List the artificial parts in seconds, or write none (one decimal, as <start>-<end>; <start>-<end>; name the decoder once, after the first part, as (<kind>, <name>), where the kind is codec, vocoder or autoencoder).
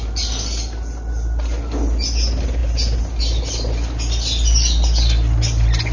none